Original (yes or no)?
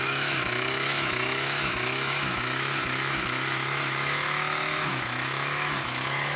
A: no